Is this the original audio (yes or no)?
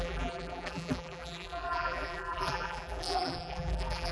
no